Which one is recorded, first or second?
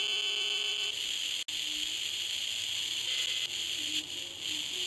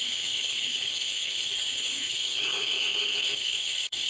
first